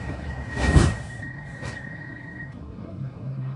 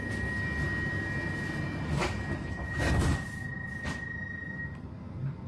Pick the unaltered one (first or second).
second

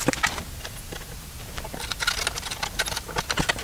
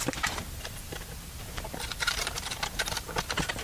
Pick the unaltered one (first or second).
first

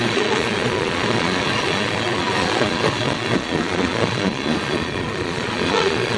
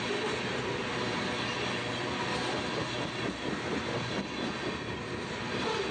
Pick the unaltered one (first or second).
second